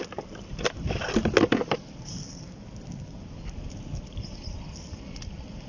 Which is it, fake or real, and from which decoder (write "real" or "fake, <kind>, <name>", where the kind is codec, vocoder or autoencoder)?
real